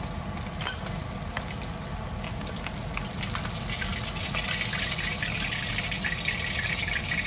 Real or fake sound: real